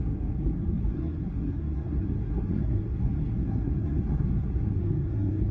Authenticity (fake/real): fake